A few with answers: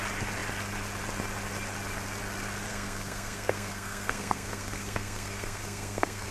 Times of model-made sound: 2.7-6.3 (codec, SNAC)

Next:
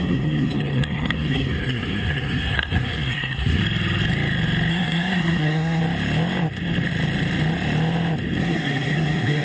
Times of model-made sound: 0.0-3.6 (codec, SNAC); 4.7-5.8; 8.4-9.4

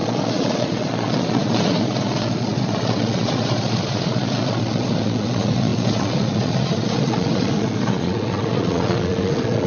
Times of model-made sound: 0.0-9.7 (vocoder, Vocos)